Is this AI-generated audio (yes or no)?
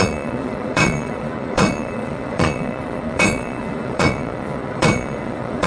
yes